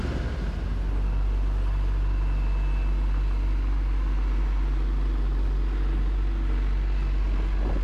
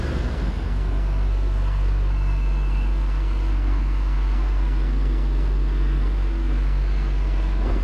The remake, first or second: second